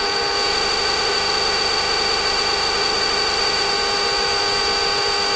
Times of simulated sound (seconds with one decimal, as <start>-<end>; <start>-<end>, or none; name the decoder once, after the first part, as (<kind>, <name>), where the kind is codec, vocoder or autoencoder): 0.5-3.7 (autoencoder, DAC-VAE)